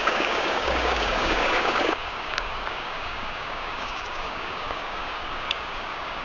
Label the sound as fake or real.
fake